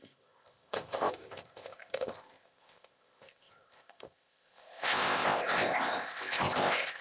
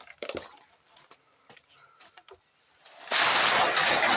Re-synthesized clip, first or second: first